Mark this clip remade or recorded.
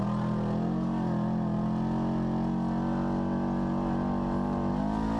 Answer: recorded